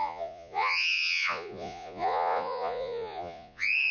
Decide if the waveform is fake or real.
fake